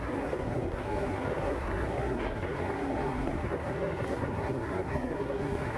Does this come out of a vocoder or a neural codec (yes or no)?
yes